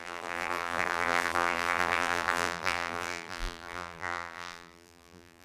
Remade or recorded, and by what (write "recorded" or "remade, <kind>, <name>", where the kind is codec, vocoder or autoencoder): remade, vocoder, BigVGAN v2